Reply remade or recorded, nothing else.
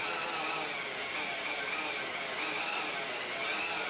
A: recorded